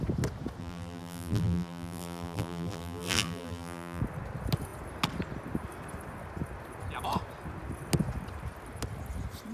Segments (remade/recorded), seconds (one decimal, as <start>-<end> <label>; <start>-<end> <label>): 0.0-0.6 recorded; 0.6-4.0 remade; 4.0-9.5 recorded